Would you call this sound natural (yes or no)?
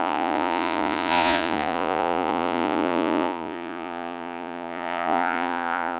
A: no